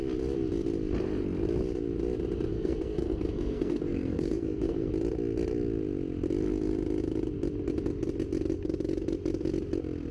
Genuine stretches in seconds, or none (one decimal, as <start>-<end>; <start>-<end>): 0.0-2.5; 4.9-10.1